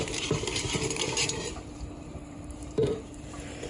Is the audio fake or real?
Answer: fake